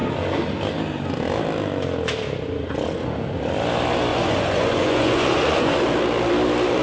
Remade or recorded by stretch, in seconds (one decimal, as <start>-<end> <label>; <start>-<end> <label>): 0.0-4.1 recorded; 4.1-5.8 remade; 5.8-6.8 recorded